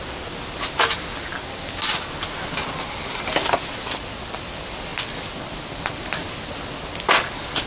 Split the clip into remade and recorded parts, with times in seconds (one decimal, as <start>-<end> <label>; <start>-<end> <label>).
0.0-7.7 recorded